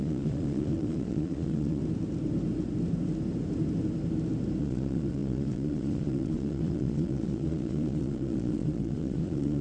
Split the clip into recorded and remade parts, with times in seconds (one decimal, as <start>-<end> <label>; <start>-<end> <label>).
0.0-1.8 remade; 1.8-4.6 recorded; 4.6-9.6 remade